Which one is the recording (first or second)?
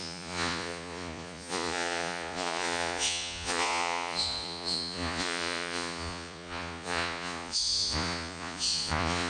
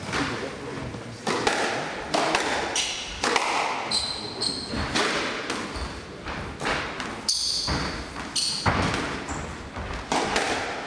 second